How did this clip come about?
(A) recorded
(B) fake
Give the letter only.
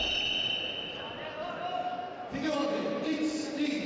A